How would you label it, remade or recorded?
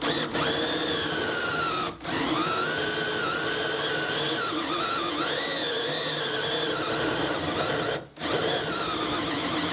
recorded